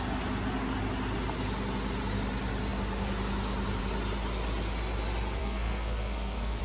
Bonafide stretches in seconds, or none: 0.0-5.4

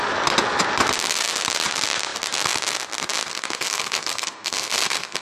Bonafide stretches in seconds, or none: 0.0-3.3

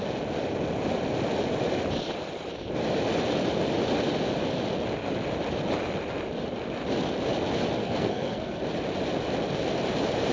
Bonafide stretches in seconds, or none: 0.0-7.8; 8.6-10.3